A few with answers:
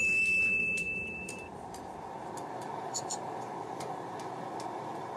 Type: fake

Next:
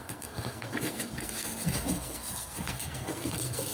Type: fake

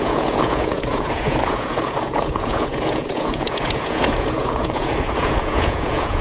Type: fake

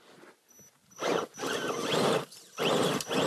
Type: real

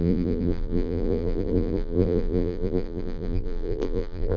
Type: fake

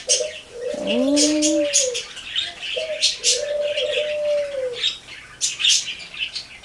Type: real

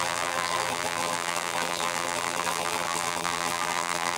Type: fake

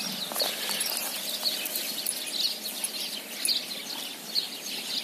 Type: real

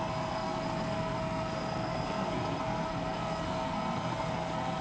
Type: fake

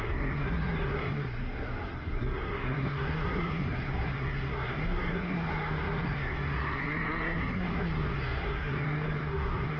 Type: fake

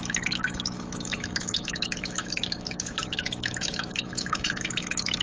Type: fake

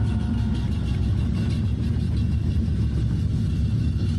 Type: real